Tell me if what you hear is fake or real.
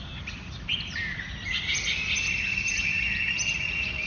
real